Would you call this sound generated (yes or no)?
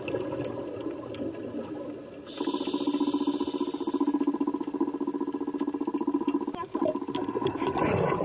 no